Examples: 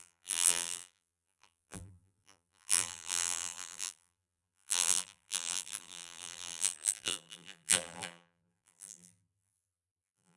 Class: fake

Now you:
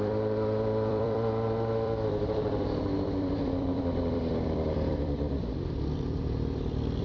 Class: fake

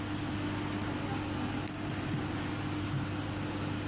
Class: real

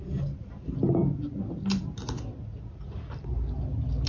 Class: real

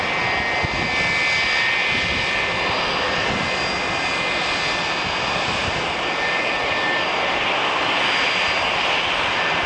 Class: real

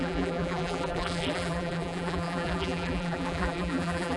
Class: fake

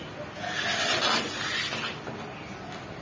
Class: real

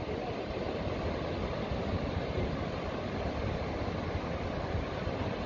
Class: real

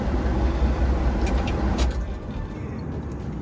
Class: fake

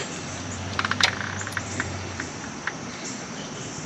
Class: fake